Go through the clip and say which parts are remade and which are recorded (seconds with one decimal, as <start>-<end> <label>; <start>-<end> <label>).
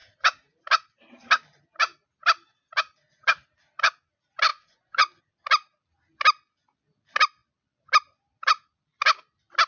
0.0-4.5 recorded; 4.5-5.2 remade; 5.2-9.7 recorded